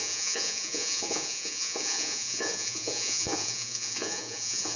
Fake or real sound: fake